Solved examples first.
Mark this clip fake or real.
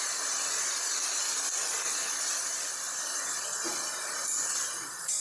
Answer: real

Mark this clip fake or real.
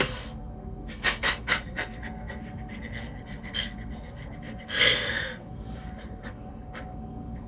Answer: fake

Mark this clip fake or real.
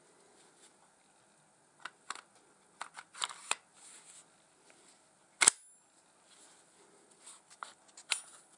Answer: real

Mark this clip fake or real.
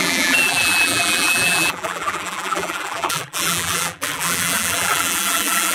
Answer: fake